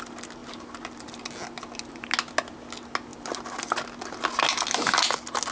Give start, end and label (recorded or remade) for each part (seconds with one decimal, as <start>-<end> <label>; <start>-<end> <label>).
0.0-5.5 recorded